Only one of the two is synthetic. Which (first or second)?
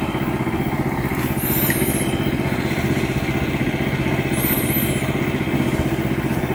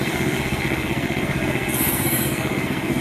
second